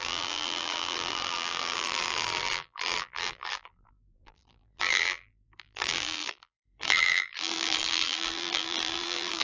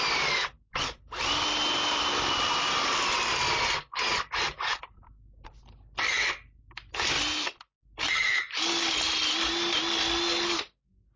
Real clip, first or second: second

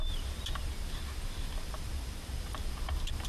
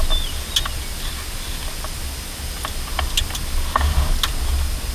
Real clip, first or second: second